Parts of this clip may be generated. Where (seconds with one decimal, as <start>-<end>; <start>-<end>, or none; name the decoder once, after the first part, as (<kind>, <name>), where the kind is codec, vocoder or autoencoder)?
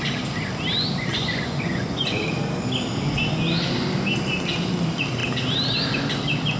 1.1-2.2 (vocoder, Vocos)